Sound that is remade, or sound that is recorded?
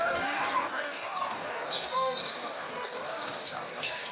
remade